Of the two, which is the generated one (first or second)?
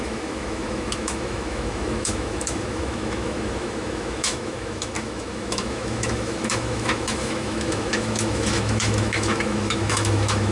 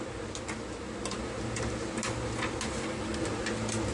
first